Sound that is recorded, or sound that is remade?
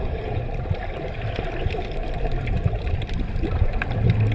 recorded